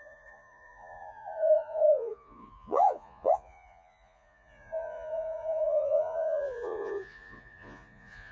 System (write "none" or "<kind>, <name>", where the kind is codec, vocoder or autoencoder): vocoder, Vocos